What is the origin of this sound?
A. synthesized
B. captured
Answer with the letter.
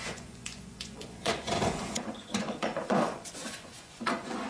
A